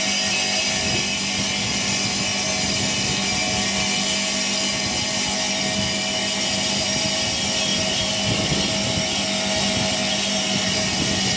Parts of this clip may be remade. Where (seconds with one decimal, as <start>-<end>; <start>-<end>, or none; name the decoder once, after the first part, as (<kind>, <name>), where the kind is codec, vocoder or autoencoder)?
7.7-8.3 (vocoder, BigVGAN v2); 10.3-11.4